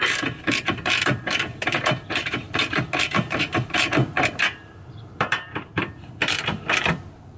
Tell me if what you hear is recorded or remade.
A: remade